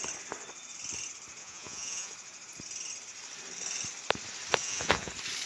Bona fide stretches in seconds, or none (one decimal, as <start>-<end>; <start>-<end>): 0.0-1.4; 2.1-4.6; 5.1-5.5